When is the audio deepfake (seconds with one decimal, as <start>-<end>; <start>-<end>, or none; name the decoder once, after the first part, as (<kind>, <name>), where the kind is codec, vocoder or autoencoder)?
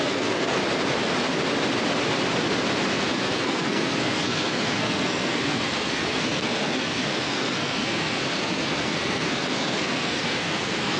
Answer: 0.0-0.6 (codec, SNAC); 2.9-11.0